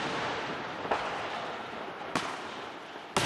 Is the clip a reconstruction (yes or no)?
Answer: no